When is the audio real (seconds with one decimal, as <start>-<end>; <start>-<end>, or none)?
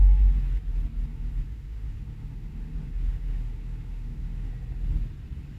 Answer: 0.0-1.1; 4.5-5.6